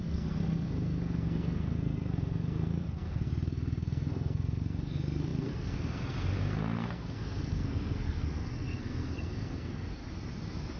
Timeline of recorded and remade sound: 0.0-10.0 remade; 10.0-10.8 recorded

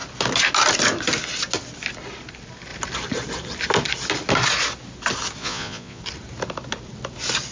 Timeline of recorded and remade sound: 0.0-5.4 recorded; 5.4-6.0 remade; 6.0-7.5 recorded

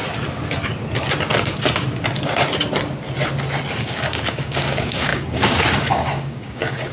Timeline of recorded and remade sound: 0.0-3.8 recorded; 3.8-6.9 remade

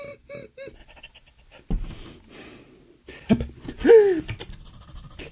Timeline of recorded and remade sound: 0.0-5.3 recorded

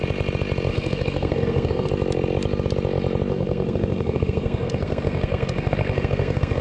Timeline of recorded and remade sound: 0.0-0.7 recorded; 0.7-1.9 remade; 1.9-3.3 recorded; 3.3-6.6 remade

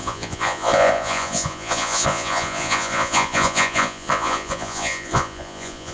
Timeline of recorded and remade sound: 0.0-5.9 remade